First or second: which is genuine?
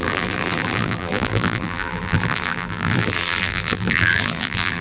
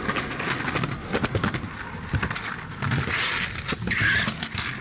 second